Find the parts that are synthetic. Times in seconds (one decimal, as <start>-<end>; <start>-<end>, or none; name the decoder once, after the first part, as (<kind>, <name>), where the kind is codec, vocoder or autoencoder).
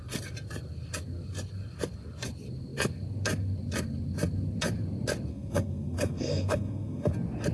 5.3-7.1 (codec, SNAC)